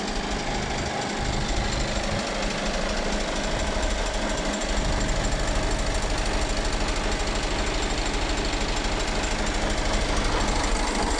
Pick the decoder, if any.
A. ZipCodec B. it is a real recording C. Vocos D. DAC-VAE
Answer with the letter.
B